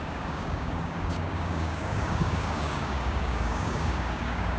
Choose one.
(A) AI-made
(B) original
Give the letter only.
A